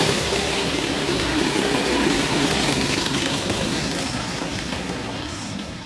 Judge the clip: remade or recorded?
remade